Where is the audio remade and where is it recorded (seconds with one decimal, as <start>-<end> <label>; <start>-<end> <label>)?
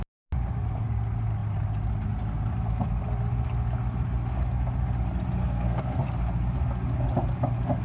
0.0-5.4 recorded; 5.4-6.0 remade; 6.0-7.8 recorded